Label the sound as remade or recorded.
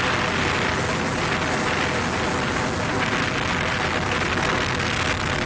recorded